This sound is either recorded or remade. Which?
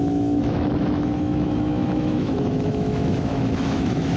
remade